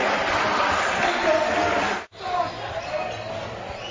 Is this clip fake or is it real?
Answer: real